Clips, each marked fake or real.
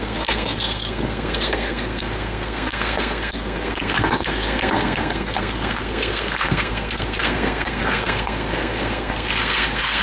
fake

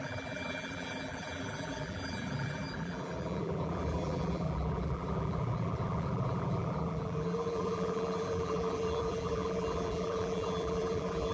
fake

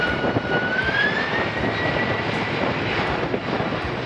real